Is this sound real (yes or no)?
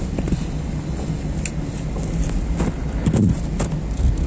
yes